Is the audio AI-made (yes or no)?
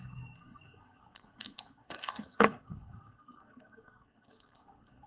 yes